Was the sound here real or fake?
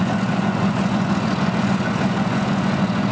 fake